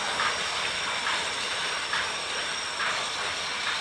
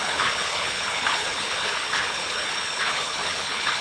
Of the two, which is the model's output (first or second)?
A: second